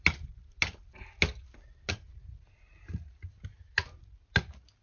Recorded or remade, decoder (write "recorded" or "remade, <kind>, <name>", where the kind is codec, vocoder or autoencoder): recorded